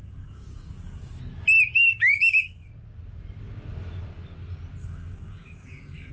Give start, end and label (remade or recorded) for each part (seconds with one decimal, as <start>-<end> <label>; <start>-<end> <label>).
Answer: 0.0-1.2 remade; 1.2-1.8 recorded; 1.8-2.7 remade; 2.7-4.8 recorded; 4.8-6.1 remade